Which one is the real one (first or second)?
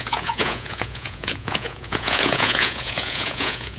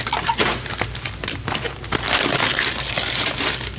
second